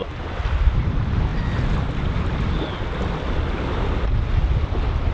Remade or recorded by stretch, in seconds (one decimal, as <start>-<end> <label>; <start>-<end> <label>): 0.0-1.3 recorded; 1.3-2.2 remade; 2.2-5.1 recorded